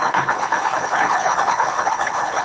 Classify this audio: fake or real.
fake